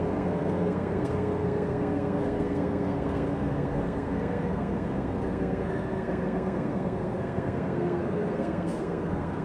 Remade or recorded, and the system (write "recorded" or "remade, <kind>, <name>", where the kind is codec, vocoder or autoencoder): remade, codec, SNAC